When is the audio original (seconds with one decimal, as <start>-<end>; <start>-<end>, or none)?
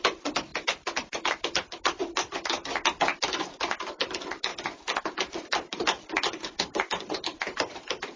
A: 0.0-8.2